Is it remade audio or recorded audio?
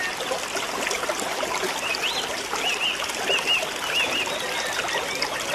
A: recorded